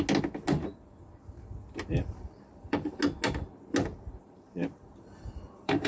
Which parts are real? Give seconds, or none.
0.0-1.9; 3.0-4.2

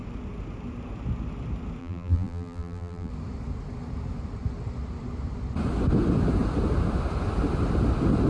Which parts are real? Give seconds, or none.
0.0-1.8; 3.1-8.3

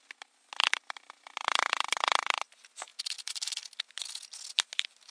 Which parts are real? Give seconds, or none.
0.0-5.1

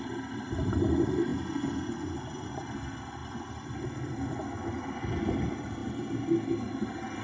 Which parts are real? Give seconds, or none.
1.3-2.2; 4.4-5.3; 5.8-7.2

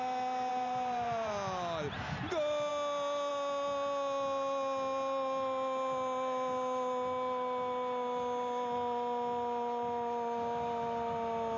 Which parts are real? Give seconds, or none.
0.0-0.5; 1.3-11.6

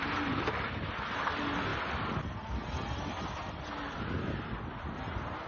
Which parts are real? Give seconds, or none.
0.0-5.5

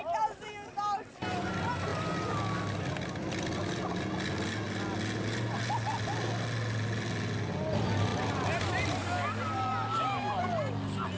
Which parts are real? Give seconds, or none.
0.0-11.2

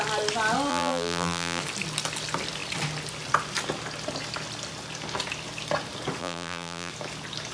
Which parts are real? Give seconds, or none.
0.0-0.7; 1.6-6.2; 6.9-7.5